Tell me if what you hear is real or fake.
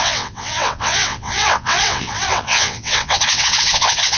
fake